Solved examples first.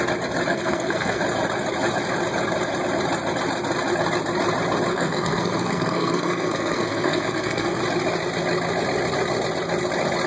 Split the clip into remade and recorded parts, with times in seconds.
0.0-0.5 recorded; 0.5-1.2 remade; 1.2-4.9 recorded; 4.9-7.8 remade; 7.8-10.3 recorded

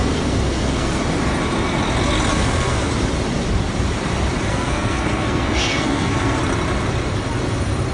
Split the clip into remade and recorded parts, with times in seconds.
0.0-1.0 remade; 1.0-2.3 recorded; 2.3-2.9 remade; 2.9-4.5 recorded; 4.5-6.4 remade; 6.4-7.9 recorded

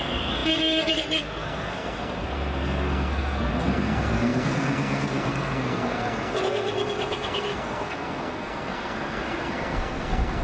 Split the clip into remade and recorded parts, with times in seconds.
0.0-10.4 remade

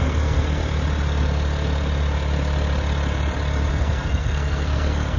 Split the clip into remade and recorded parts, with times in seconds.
0.0-0.6 remade; 0.6-3.7 recorded; 3.7-5.2 remade

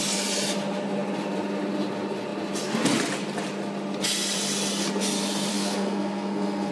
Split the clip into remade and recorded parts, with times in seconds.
0.0-5.5 recorded; 5.5-6.7 remade

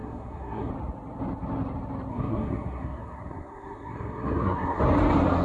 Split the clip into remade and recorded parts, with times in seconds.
0.0-0.7 remade; 0.7-2.1 recorded; 2.1-4.8 remade; 4.8-5.4 recorded

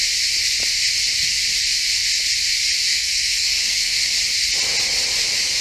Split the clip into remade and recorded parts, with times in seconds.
0.0-2.9 recorded; 2.9-4.0 remade; 4.0-5.6 recorded